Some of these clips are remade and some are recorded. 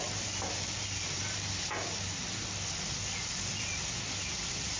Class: recorded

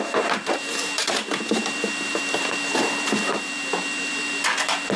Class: remade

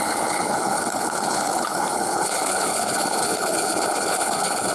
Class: remade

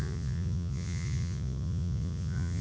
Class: remade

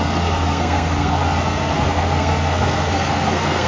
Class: remade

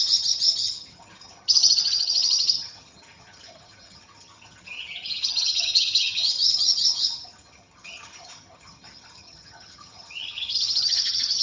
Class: remade